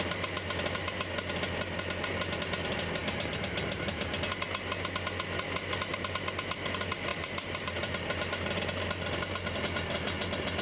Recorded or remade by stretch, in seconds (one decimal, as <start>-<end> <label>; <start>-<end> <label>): 0.0-7.1 recorded; 7.1-8.8 remade; 8.8-10.6 recorded